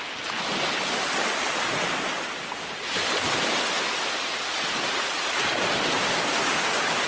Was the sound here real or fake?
real